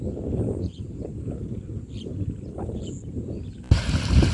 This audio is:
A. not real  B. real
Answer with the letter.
B